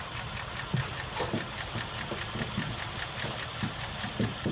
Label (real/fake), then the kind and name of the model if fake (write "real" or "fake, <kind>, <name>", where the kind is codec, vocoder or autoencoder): real